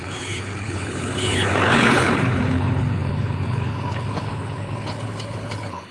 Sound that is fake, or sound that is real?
fake